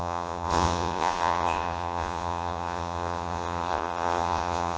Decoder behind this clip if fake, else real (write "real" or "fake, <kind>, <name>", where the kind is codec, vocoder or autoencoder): fake, vocoder, Vocos